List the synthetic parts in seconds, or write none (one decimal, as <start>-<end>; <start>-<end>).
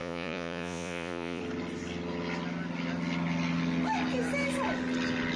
0.0-1.4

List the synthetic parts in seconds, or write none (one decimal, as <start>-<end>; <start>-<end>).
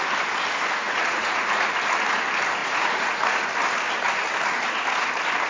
0.8-1.8; 2.6-3.5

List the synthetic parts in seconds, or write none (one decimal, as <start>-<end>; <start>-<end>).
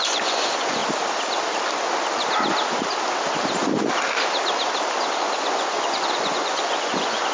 0.0-0.8; 5.2-7.3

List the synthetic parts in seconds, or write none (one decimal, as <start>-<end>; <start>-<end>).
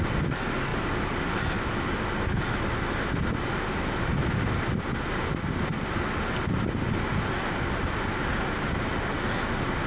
none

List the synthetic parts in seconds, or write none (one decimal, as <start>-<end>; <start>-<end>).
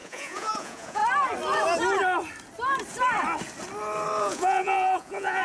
0.0-1.0; 4.2-5.4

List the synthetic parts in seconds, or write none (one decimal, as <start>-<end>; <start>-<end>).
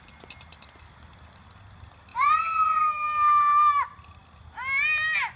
2.1-2.8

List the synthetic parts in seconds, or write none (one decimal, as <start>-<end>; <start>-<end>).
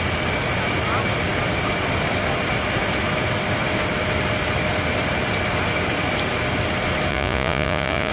7.1-8.1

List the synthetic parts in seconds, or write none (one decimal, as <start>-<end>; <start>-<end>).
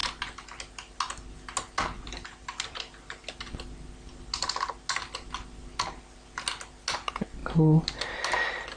none